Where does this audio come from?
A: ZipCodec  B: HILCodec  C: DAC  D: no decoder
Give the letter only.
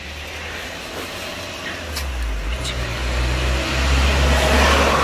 D